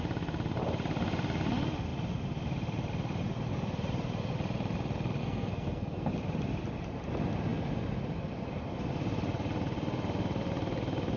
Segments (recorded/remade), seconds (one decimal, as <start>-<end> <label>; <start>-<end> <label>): 0.0-5.2 recorded; 5.2-6.1 remade; 6.1-11.2 recorded